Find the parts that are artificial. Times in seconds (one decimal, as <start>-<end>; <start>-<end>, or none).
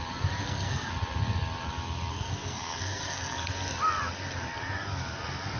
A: 0.4-0.9; 2.1-3.5